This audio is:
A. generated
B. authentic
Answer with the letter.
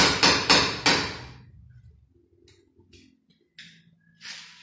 B